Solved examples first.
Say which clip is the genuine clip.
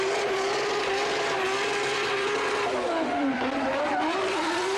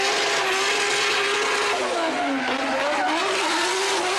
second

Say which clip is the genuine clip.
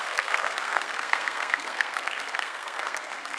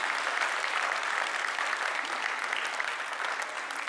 second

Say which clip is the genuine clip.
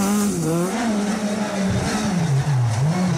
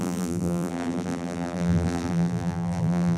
first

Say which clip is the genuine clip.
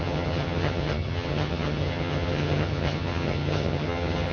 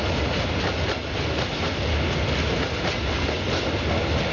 second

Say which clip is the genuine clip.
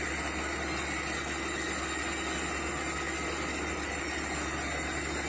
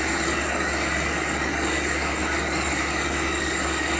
first